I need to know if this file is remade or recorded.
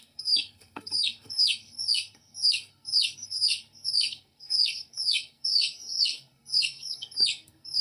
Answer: remade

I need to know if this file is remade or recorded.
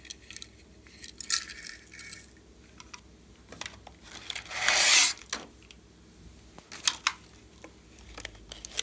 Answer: recorded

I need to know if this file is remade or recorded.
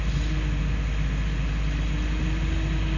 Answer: recorded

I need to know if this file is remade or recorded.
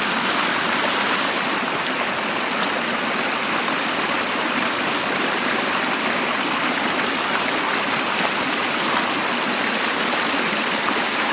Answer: recorded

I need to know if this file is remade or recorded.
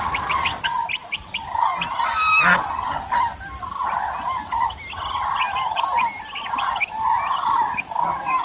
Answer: recorded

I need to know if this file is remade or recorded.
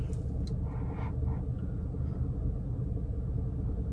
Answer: recorded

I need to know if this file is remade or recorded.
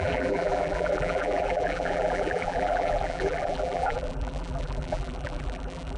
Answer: remade